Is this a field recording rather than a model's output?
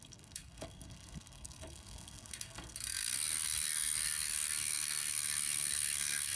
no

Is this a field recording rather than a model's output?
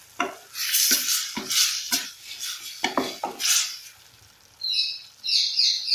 yes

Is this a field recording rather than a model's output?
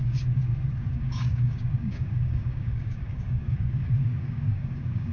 no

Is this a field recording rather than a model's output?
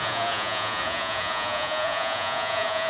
no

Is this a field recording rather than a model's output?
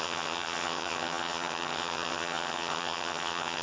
no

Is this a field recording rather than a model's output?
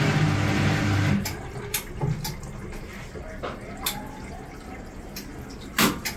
yes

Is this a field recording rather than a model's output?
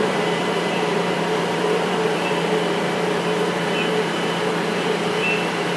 no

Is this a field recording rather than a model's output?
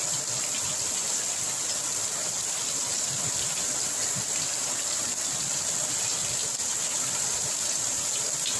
yes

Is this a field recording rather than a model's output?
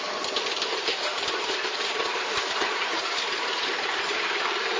no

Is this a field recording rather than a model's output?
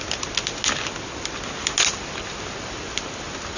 yes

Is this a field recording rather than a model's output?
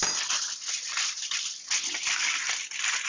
yes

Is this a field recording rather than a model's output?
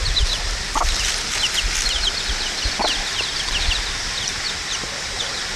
yes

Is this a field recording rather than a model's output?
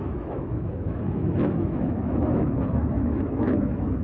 no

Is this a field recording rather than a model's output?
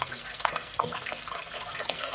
no